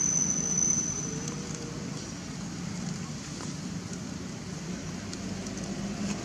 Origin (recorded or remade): recorded